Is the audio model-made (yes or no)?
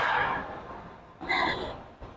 no